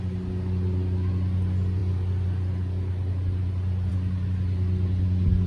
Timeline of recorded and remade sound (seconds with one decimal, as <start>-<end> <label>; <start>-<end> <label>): 0.0-5.5 recorded